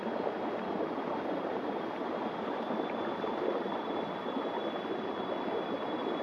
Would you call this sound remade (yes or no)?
no